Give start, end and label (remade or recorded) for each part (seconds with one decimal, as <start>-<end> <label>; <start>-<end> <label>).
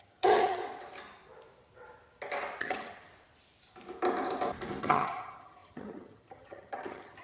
0.0-0.6 remade; 0.6-2.6 recorded; 2.6-3.1 remade; 3.1-4.8 recorded; 4.8-7.2 remade